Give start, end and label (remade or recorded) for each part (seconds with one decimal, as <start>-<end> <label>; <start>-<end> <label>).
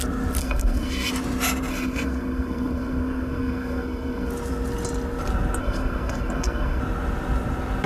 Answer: 0.0-0.4 recorded; 0.4-1.1 remade; 1.1-1.7 recorded; 1.7-4.3 remade; 4.3-5.6 recorded; 5.6-6.8 remade; 6.8-7.9 recorded